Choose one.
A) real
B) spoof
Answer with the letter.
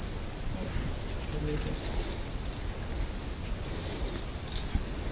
A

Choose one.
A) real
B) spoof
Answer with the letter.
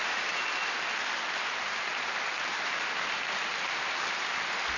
A